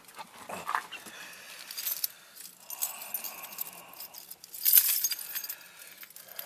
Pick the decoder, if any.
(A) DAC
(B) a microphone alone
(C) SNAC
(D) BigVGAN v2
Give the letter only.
B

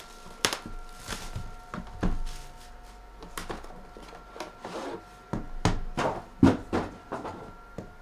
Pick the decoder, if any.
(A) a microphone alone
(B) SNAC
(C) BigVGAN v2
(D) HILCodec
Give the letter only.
A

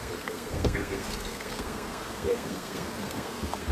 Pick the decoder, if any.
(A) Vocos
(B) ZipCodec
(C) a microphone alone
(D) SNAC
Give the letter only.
D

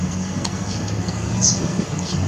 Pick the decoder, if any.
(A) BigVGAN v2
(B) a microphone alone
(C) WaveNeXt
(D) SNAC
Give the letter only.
D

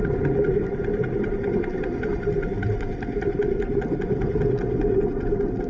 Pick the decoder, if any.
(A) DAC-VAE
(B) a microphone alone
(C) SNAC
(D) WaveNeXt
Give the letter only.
B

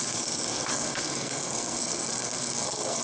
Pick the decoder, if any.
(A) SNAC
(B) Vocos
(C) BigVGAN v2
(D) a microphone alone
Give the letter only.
A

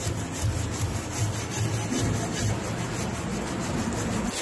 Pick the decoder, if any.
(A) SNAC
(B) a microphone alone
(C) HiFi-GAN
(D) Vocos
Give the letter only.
B